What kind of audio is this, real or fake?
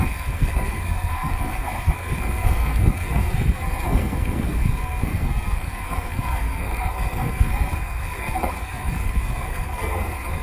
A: fake